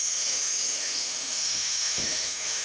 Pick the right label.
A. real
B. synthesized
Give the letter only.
B